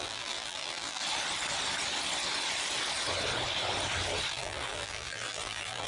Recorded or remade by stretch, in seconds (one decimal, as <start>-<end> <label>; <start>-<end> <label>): 0.0-1.0 remade; 1.0-4.3 recorded; 4.3-5.9 remade